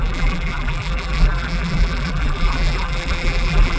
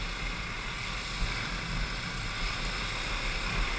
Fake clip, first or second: first